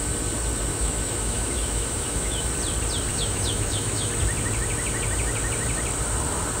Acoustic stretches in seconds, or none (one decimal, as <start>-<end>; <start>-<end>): 0.0-0.7; 2.5-3.1; 4.1-6.6